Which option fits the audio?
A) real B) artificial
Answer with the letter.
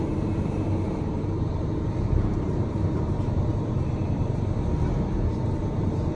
B